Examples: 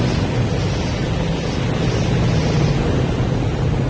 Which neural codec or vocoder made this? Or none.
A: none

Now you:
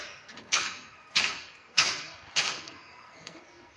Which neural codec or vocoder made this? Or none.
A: codec, SNAC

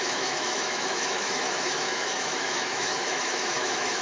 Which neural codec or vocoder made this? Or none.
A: autoencoder, DAC-VAE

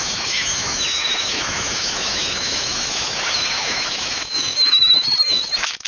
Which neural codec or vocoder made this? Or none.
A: autoencoder, DAC-VAE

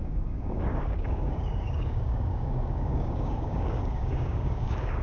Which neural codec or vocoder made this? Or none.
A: codec, DAC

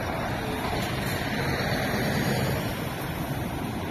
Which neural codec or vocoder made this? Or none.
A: vocoder, BigVGAN v2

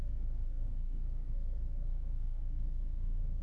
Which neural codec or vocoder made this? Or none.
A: codec, SNAC